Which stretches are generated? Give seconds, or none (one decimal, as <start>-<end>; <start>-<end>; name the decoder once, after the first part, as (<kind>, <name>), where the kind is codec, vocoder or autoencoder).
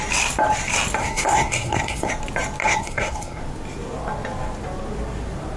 1.0-2.1 (codec, SNAC); 2.6-3.4